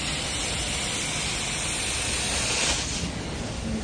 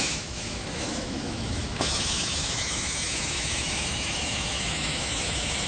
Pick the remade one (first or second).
second